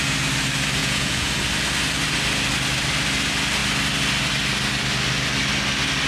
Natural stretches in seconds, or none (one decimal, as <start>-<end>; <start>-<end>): 0.0-0.8; 1.3-6.1